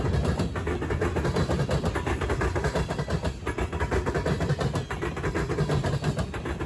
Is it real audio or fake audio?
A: real